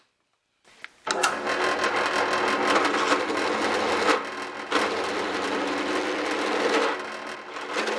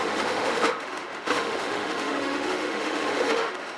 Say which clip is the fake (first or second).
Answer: second